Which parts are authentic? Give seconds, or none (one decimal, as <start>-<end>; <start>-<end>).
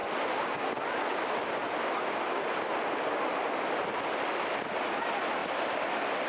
0.0-6.3